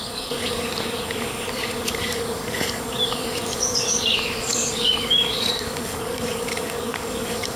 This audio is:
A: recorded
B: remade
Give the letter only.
B